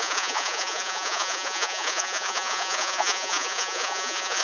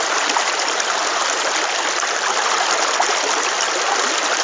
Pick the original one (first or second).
second